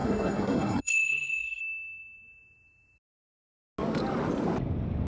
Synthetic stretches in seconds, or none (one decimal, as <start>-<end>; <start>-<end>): 0.0-1.6